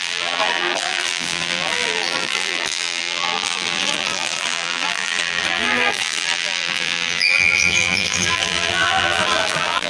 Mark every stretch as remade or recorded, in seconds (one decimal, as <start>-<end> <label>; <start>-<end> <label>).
0.0-9.9 remade